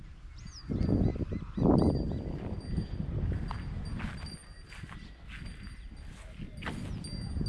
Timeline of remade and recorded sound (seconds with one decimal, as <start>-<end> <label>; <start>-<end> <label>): 0.0-1.1 recorded; 1.1-1.6 remade; 1.6-7.5 recorded